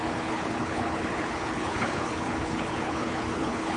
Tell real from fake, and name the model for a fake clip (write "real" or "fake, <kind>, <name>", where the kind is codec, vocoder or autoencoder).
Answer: fake, codec, HILCodec